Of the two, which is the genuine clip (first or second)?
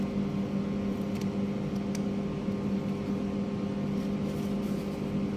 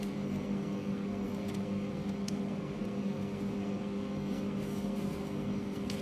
first